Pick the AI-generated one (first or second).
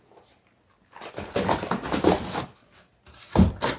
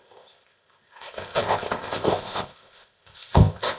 second